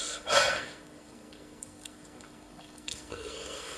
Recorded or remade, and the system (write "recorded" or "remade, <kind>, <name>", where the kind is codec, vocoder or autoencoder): remade, codec, SNAC